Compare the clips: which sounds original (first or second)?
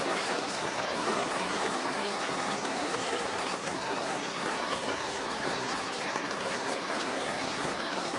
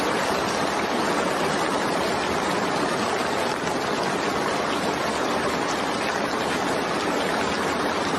second